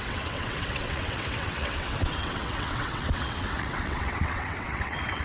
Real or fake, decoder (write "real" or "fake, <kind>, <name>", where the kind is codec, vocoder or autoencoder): fake, vocoder, WaveNeXt